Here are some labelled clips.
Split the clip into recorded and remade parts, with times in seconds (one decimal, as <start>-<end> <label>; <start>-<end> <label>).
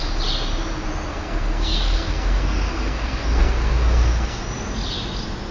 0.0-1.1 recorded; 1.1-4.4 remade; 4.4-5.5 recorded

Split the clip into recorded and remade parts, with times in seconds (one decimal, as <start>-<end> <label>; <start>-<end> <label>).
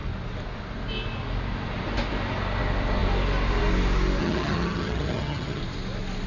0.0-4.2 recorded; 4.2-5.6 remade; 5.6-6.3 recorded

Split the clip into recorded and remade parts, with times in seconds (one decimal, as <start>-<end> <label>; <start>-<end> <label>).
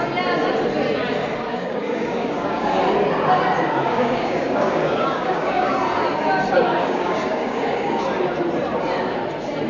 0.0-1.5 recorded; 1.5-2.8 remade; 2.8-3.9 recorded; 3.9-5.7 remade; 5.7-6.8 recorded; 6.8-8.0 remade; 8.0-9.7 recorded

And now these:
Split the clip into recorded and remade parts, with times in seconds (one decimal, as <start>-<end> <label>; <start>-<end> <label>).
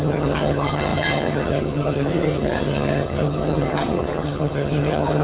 0.0-5.2 remade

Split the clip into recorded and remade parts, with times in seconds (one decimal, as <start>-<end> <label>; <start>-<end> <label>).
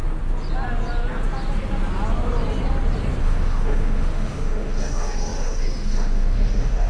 0.0-3.2 recorded; 3.2-6.9 remade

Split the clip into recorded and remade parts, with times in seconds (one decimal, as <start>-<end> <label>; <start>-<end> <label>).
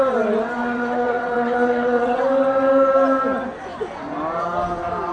0.0-0.6 recorded; 0.6-2.2 remade; 2.2-5.1 recorded